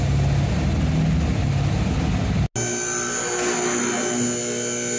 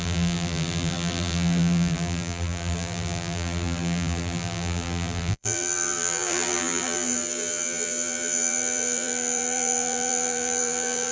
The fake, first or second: second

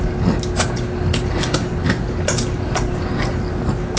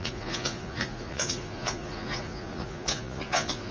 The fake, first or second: second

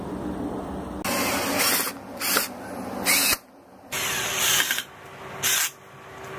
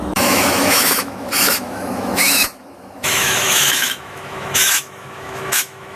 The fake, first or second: second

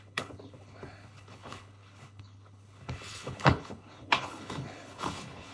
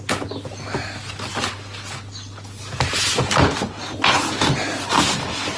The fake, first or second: first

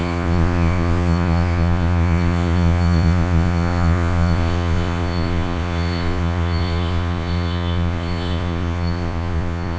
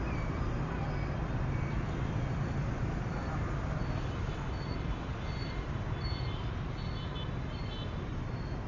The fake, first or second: first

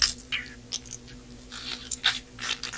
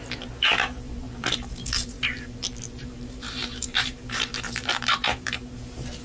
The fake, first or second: second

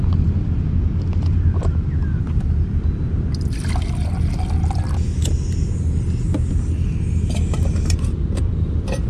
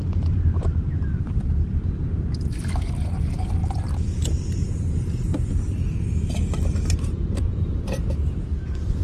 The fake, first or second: second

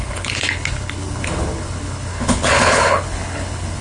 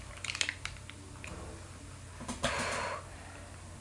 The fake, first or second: first